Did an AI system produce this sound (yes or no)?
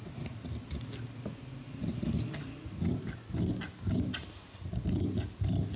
no